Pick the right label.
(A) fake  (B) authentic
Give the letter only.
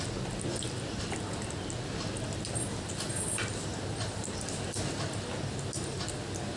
B